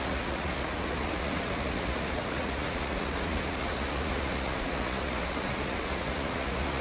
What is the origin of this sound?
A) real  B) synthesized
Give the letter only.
B